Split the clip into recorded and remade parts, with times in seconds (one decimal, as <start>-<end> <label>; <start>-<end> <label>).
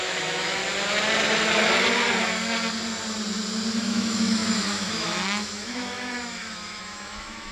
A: 0.0-0.6 remade; 0.6-3.8 recorded; 3.8-7.5 remade